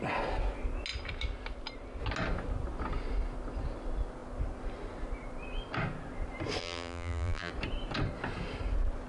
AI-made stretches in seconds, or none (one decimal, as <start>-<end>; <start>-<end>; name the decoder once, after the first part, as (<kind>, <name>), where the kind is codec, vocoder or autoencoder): 6.6-7.5 (vocoder, BigVGAN v2)